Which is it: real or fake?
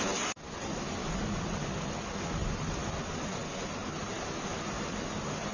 real